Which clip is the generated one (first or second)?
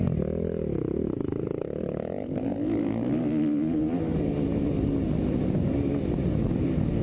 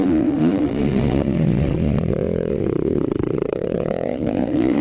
second